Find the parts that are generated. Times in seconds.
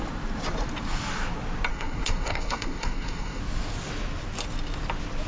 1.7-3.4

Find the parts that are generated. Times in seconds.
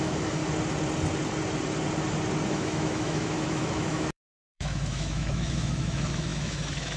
0.0-0.4; 2.5-7.0